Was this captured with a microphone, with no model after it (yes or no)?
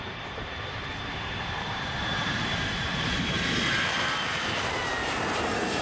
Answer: no